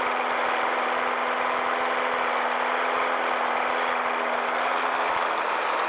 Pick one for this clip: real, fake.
real